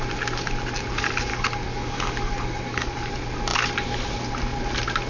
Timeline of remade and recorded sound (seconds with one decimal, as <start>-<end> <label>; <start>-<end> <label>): 0.0-1.3 recorded; 1.3-3.1 remade; 3.1-5.1 recorded